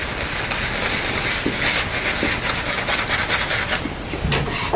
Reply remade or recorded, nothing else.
recorded